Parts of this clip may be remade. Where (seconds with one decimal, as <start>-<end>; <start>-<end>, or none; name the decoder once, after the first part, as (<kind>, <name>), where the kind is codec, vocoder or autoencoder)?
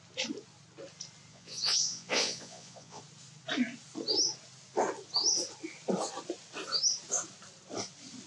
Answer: 1.3-3.0 (vocoder, Vocos)